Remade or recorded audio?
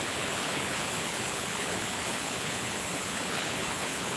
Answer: remade